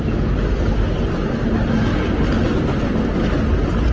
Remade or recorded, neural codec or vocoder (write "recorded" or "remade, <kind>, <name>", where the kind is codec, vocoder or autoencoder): recorded